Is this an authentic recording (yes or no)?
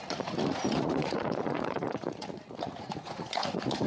no